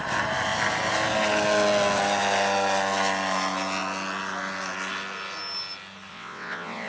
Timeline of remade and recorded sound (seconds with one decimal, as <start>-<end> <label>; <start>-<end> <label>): 0.0-6.1 recorded; 6.1-6.9 remade